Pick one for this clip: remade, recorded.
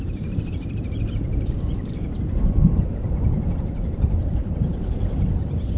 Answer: remade